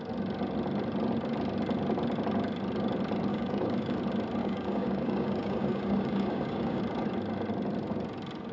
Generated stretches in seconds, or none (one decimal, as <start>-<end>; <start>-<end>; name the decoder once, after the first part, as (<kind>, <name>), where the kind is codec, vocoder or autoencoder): 3.3-4.0 (codec, DAC); 4.4-6.8